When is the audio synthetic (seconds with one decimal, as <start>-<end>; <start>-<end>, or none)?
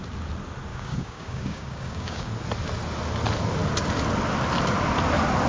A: 0.7-2.3